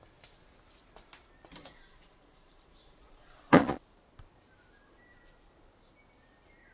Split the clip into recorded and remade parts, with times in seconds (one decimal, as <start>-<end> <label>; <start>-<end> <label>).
0.0-1.6 recorded; 1.6-3.8 remade; 3.8-6.7 recorded